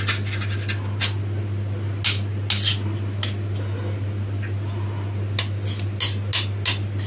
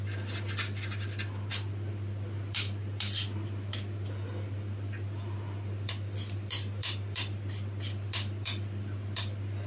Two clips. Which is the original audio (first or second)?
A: first